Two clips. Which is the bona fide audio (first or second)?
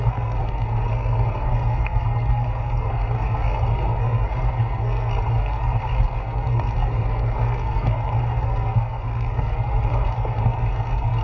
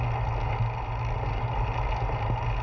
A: second